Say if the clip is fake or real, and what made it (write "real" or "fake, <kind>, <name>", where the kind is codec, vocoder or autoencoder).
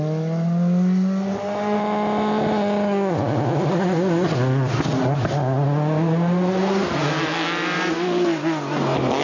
real